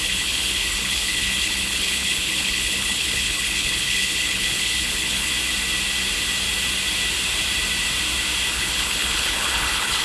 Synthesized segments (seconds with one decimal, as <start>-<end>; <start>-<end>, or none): 0.0-5.3; 8.5-10.0